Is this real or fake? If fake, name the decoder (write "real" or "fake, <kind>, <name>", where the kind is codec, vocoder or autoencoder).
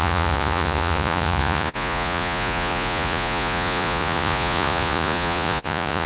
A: fake, vocoder, Vocos